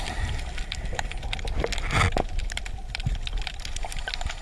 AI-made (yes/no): no